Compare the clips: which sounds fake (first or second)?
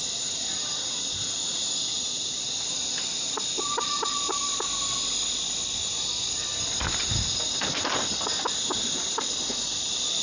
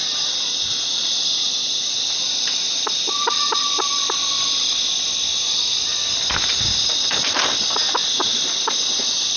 first